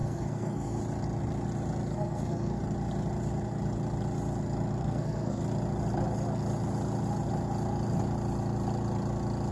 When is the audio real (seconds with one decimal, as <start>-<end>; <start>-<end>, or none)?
0.8-1.9; 2.6-4.8; 5.4-9.5